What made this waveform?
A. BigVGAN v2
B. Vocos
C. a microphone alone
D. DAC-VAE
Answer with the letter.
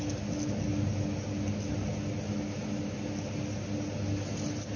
C